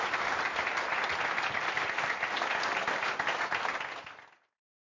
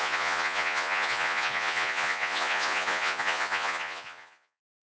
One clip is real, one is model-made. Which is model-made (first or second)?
second